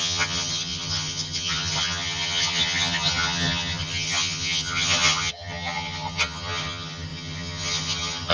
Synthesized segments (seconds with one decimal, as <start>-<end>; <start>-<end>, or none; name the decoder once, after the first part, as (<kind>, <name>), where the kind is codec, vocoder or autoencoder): 0.0-8.3 (vocoder, HiFi-GAN)